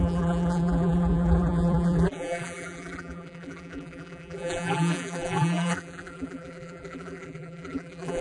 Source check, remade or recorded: remade